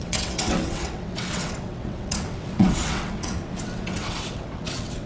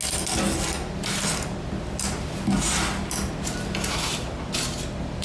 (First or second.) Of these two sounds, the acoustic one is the second